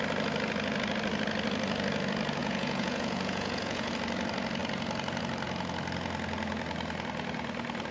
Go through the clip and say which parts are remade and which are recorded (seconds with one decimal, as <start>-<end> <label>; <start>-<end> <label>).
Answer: 0.0-2.4 recorded; 2.4-3.9 remade; 3.9-7.9 recorded